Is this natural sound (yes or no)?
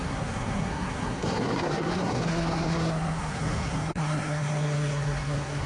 no